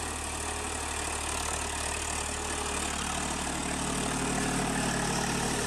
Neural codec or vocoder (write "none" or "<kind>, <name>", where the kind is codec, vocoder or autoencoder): none